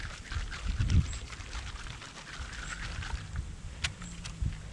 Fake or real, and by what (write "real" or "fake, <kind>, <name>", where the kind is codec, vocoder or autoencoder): real